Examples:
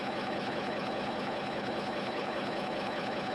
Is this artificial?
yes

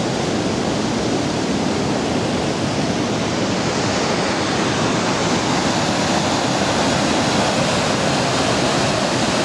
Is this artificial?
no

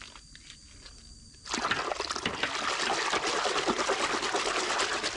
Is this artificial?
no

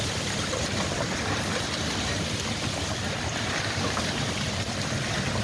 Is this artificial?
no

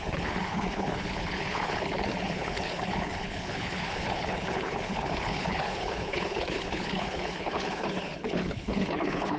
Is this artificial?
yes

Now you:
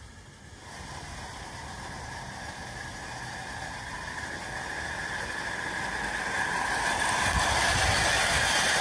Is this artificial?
no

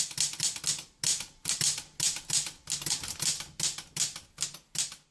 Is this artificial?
no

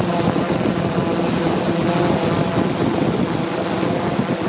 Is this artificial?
no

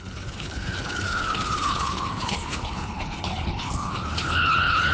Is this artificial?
yes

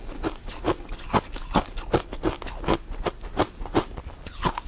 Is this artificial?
no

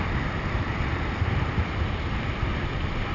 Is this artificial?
no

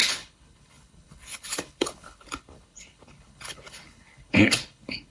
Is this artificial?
yes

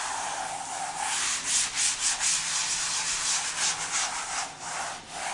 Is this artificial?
no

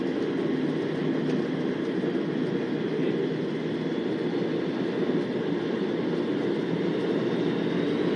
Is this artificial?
no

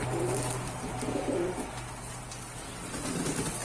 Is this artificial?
no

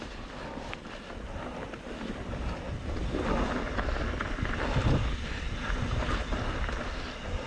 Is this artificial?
no